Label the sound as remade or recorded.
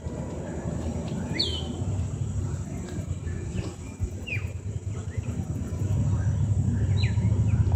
recorded